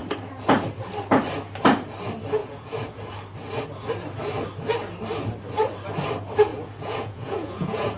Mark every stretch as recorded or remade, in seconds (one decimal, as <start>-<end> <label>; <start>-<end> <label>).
0.0-2.4 recorded; 2.4-3.1 remade; 3.1-6.5 recorded; 6.5-8.0 remade